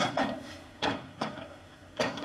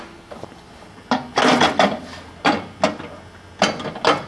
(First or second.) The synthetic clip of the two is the first